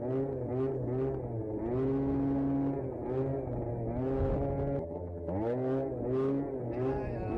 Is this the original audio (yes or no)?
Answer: yes